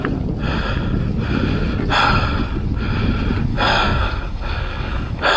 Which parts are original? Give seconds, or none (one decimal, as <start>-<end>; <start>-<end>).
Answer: 0.0-3.5